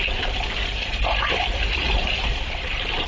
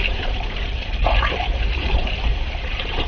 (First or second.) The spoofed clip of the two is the second